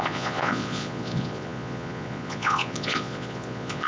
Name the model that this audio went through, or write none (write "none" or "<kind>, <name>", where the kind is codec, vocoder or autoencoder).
vocoder, Vocos